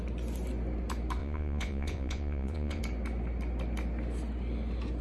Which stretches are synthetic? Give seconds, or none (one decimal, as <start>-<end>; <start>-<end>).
1.2-2.8